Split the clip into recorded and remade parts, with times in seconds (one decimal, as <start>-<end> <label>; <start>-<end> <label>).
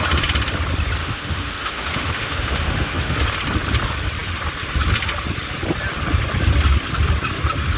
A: 0.0-1.0 recorded; 1.0-3.2 remade; 3.2-7.8 recorded